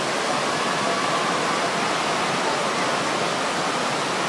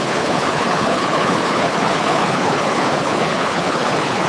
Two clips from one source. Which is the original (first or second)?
first